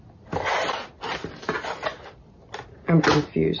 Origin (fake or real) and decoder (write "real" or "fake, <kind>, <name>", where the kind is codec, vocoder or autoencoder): real